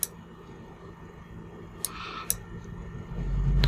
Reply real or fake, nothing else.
real